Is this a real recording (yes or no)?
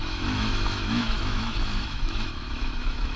no